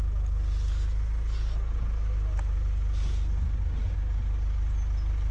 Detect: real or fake real